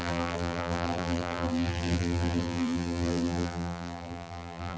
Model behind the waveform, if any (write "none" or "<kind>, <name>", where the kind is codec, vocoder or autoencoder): vocoder, BigVGAN v2